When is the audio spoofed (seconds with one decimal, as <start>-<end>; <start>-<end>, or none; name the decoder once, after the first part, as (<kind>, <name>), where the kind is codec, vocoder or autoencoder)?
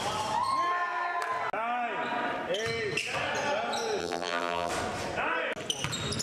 4.0-4.7 (vocoder, BigVGAN v2)